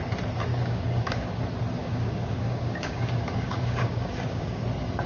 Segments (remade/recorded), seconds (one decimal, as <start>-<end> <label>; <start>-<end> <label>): 0.0-0.5 recorded; 0.5-1.4 remade; 1.4-1.8 recorded; 1.8-4.6 remade; 4.6-5.1 recorded